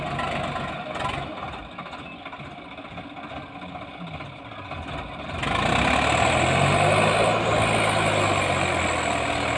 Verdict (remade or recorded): recorded